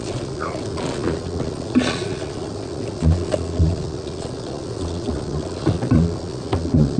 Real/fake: fake